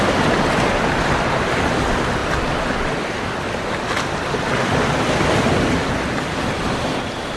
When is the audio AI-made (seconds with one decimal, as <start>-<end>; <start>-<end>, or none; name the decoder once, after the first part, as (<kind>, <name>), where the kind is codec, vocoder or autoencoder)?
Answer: none